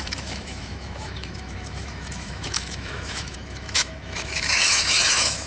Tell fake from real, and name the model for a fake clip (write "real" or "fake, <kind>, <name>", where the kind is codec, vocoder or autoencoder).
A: fake, autoencoder, DAC-VAE